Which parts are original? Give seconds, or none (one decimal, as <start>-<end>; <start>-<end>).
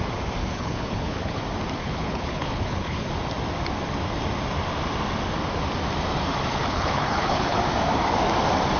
0.0-0.4; 1.4-1.8; 3.1-6.5; 7.6-8.8